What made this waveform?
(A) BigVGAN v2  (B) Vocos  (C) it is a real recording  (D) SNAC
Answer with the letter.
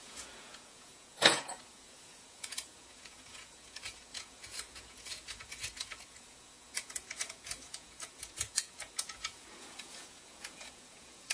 B